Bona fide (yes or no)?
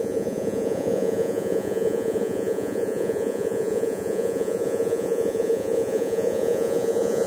no